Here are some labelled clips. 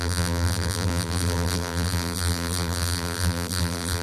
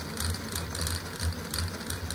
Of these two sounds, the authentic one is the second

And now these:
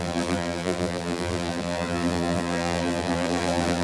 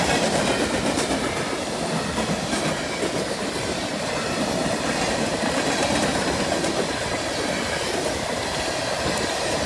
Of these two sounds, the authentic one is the second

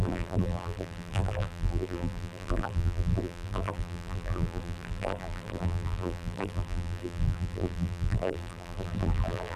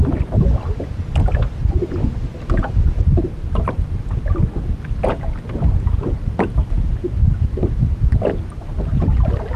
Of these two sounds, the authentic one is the second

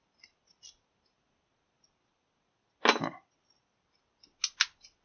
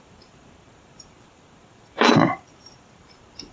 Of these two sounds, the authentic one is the first